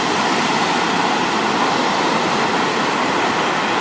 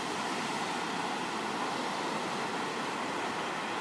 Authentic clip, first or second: second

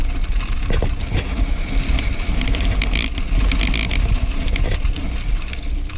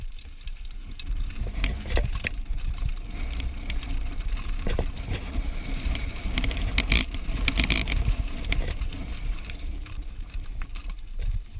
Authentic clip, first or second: first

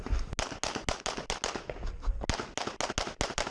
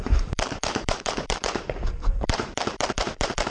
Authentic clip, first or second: first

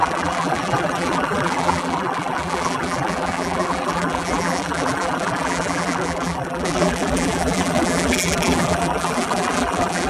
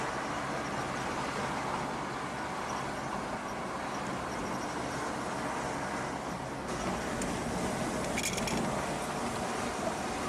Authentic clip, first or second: second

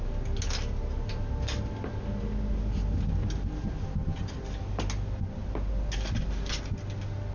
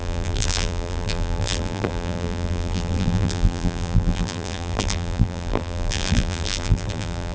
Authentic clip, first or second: first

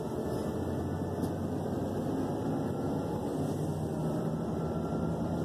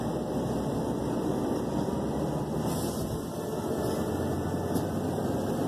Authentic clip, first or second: first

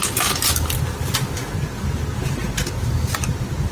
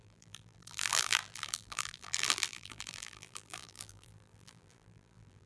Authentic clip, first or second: first